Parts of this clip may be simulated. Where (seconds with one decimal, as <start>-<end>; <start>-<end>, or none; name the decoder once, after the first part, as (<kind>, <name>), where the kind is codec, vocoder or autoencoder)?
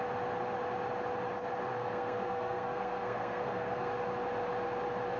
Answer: 1.7-3.9 (codec, SNAC)